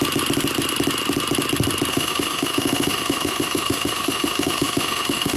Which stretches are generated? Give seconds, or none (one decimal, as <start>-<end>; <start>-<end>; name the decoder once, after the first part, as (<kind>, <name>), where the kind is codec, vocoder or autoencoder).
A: 1.9-5.4 (autoencoder, DAC-VAE)

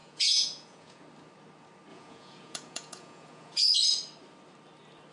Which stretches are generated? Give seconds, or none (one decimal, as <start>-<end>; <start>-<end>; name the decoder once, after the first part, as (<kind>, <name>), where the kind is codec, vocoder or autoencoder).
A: 0.0-1.0 (vocoder, Vocos); 1.9-3.6

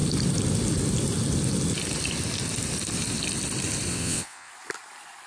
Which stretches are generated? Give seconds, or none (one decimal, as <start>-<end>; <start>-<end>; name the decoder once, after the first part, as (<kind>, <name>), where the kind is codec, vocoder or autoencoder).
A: 3.9-4.5 (vocoder, WaveNeXt)

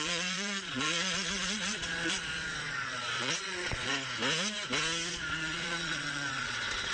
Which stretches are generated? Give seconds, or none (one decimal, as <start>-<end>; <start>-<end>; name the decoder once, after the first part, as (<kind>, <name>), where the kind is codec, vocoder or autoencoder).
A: 0.0-3.9 (vocoder, Vocos); 5.1-6.9

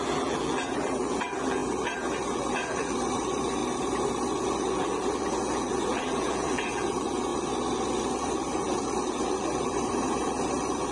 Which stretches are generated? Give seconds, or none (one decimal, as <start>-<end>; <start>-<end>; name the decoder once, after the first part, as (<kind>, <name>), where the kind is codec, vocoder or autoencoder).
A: 0.0-3.6 (vocoder, BigVGAN v2); 4.5-7.3; 8.2-10.9